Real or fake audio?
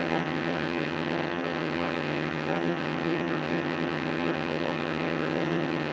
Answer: fake